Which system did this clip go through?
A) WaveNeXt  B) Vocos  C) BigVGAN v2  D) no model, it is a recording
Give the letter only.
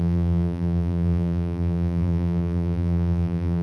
C